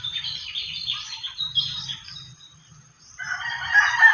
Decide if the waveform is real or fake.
fake